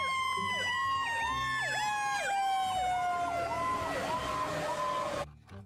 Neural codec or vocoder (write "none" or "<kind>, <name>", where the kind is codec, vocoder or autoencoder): none